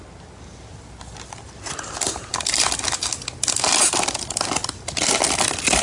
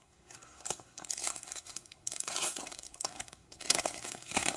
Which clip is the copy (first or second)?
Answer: second